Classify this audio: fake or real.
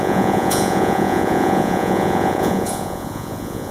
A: fake